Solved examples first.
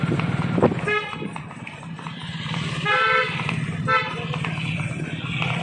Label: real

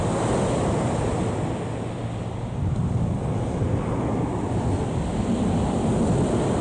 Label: real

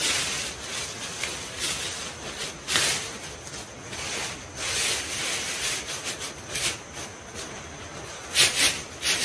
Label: real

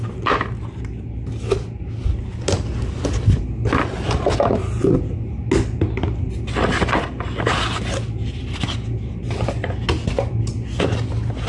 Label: real